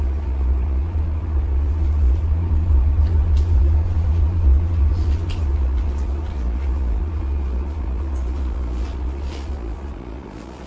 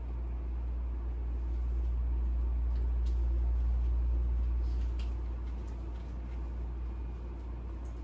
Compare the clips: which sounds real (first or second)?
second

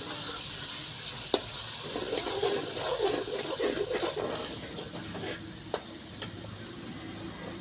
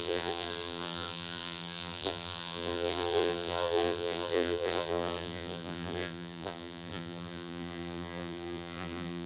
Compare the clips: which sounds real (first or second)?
first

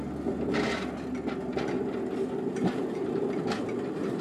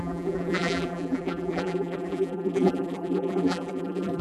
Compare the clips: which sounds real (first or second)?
first